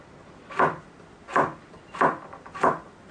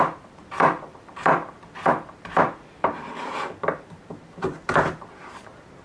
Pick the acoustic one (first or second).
first